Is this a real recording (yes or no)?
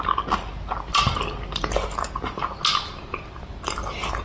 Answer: yes